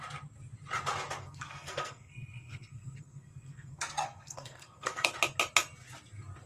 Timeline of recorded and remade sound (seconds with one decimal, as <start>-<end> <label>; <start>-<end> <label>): 0.0-1.2 recorded; 1.2-5.1 remade; 5.1-6.5 recorded